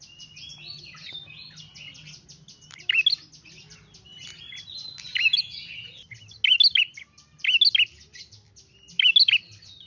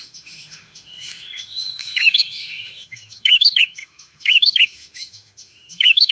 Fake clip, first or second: second